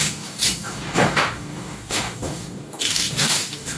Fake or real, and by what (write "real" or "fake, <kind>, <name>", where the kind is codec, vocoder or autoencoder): fake, codec, DAC